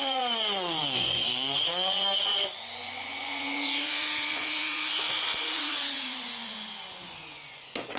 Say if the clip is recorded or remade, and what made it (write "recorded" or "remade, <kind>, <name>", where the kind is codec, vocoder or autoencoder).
remade, vocoder, Vocos